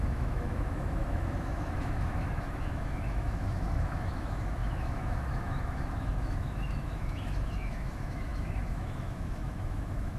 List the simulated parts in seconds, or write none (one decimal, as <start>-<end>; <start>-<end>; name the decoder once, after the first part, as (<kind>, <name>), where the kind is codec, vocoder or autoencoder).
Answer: 0.0-10.2 (autoencoder, DAC-VAE)